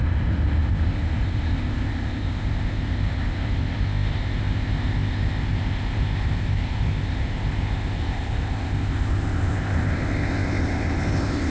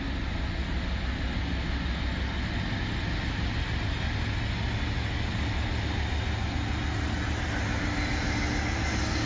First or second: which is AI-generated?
first